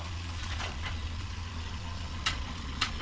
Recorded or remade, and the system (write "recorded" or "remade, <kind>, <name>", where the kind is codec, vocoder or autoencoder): remade, vocoder, Vocos